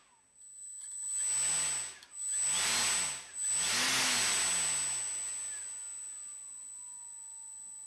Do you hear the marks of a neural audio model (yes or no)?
no